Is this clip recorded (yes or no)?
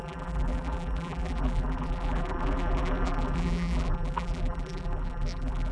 no